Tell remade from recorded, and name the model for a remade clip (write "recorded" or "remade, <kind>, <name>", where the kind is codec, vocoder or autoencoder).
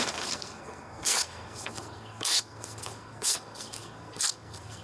remade, codec, SNAC